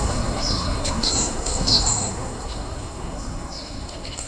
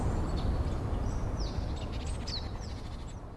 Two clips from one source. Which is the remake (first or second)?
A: first